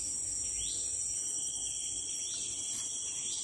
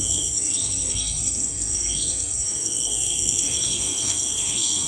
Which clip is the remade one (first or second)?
second